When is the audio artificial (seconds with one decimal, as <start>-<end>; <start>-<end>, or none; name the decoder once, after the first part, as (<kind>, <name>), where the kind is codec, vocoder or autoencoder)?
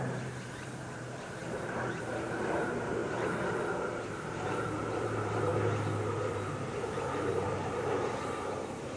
0.0-3.0 (vocoder, BigVGAN v2); 4.1-5.5; 6.2-9.0